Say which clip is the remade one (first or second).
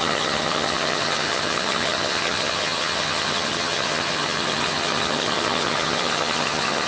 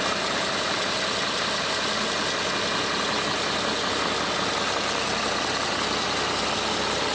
first